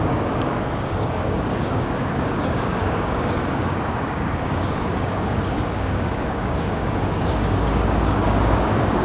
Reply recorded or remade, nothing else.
remade